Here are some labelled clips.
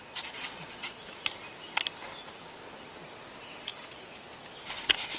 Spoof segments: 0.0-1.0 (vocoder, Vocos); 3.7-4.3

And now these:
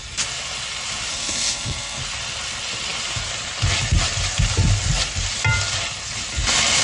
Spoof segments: 1.1-2.0 (codec, SNAC)

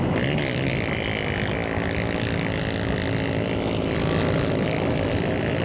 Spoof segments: none